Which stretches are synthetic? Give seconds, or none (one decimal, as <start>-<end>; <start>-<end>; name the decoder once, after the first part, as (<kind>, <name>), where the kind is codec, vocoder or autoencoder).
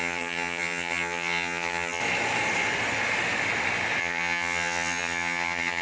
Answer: 0.0-2.0 (vocoder, HiFi-GAN); 4.0-5.8